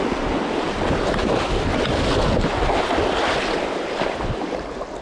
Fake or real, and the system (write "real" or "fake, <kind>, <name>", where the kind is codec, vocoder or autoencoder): real